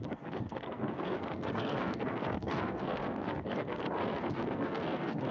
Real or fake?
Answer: fake